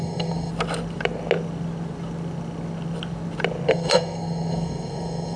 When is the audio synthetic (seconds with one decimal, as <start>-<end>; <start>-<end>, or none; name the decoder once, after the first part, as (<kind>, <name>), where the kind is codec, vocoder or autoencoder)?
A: 0.0-0.5 (codec, SNAC); 3.7-5.4